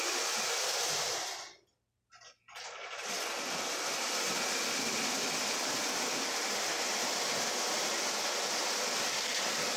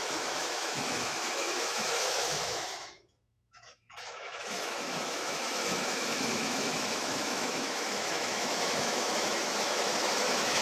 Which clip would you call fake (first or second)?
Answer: second